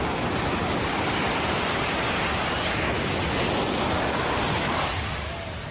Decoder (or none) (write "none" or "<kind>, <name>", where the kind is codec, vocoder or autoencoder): none